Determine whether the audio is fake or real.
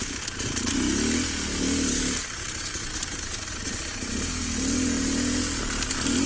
real